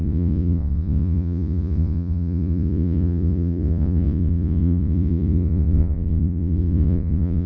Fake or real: fake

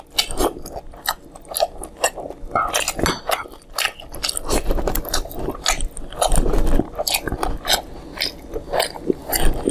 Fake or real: real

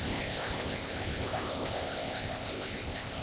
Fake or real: fake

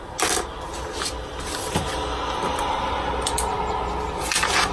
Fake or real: real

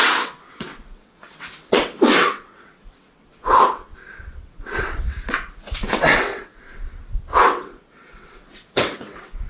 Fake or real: fake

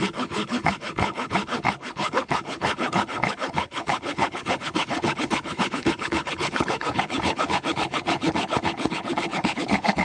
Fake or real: fake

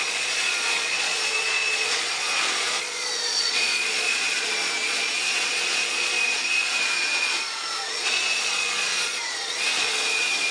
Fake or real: fake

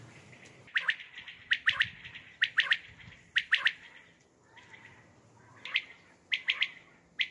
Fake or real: real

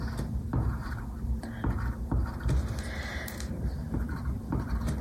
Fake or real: fake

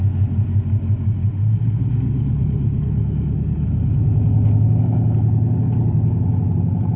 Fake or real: real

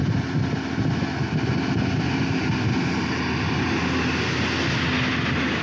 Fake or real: real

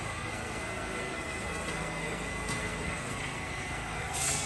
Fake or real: fake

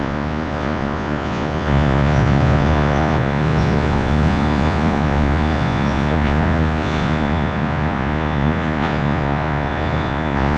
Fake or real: fake